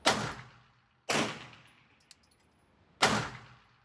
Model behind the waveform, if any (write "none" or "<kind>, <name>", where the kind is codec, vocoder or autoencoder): none